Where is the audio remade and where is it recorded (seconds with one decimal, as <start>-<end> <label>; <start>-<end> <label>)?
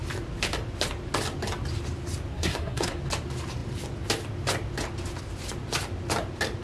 0.0-2.3 recorded; 2.3-3.0 remade; 3.0-6.6 recorded